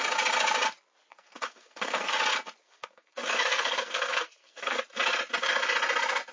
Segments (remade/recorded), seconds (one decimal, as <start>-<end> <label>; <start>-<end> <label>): 0.0-1.1 recorded; 1.1-2.1 remade; 2.1-2.6 recorded; 2.6-4.8 remade; 4.8-6.3 recorded